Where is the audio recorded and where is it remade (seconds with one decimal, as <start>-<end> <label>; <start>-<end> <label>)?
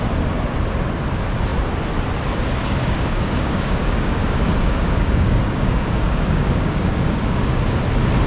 0.0-2.8 recorded; 2.8-7.6 remade; 7.6-8.3 recorded